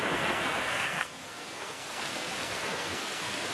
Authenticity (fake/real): fake